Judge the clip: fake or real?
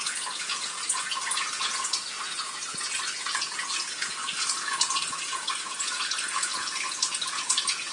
fake